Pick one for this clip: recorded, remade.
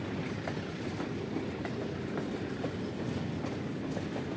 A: recorded